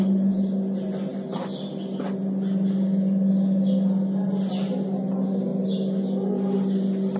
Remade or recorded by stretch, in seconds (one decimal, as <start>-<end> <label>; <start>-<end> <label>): 0.0-7.2 recorded